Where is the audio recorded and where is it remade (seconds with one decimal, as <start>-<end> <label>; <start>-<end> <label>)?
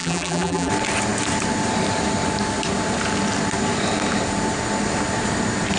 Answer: 0.0-0.7 remade; 0.7-5.8 recorded